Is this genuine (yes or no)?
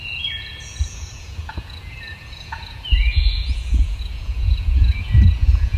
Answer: no